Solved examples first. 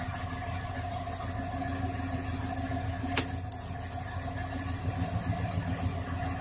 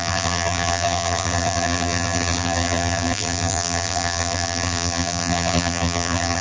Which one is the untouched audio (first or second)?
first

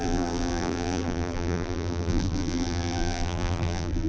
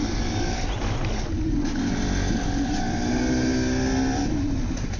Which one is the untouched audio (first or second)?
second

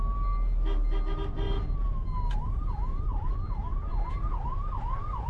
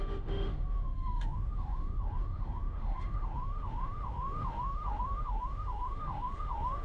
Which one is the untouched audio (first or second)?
first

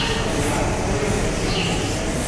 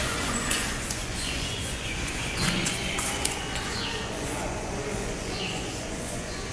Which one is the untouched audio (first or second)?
first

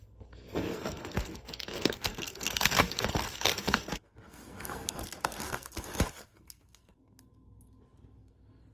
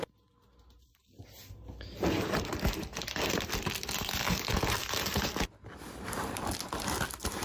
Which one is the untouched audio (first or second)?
second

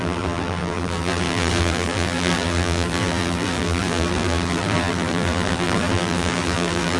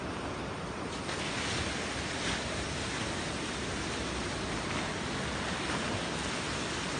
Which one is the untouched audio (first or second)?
second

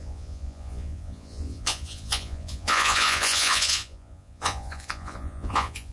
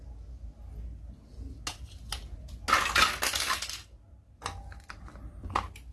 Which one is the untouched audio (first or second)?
second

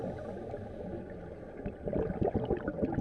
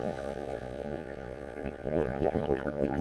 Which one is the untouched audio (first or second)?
first